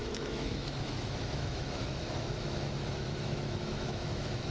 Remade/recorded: remade